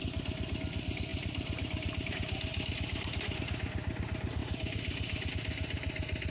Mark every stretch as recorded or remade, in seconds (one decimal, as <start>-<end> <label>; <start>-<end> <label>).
0.0-1.1 recorded; 1.1-2.1 remade; 2.1-2.5 recorded; 2.5-3.4 remade; 3.4-4.4 recorded; 4.4-5.3 remade; 5.3-6.3 recorded

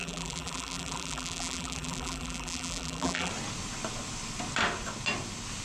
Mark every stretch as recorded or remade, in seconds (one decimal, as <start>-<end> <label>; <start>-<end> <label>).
0.0-3.3 remade; 3.3-5.6 recorded